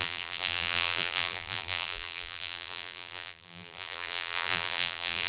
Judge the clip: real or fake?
fake